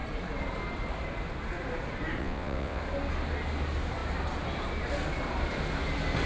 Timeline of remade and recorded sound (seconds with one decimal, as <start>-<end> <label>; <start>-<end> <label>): 0.0-2.2 recorded; 2.2-2.8 remade; 2.8-6.3 recorded